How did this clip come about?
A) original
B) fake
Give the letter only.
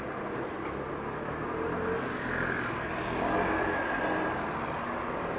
A